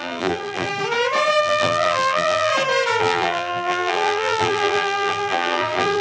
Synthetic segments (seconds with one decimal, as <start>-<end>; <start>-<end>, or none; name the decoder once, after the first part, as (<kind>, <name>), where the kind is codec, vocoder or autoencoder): 0.0-0.7 (vocoder, BigVGAN v2); 1.4-2.5; 3.0-6.0